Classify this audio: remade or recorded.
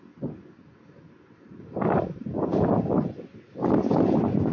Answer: recorded